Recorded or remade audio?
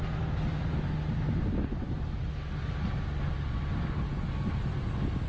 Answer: recorded